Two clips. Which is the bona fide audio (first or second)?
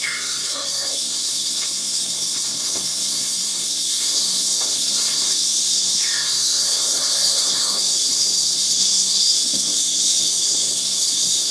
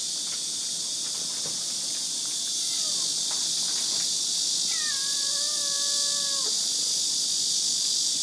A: second